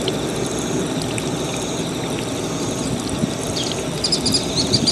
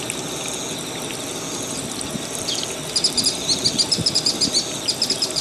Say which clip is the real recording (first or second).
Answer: second